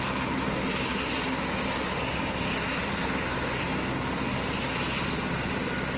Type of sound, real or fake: real